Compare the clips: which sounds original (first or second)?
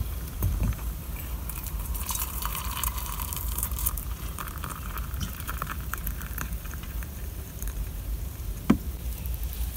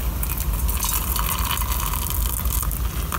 second